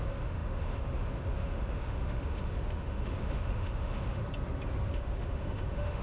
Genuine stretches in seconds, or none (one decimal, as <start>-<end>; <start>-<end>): 4.2-4.9